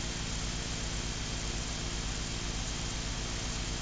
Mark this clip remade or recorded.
recorded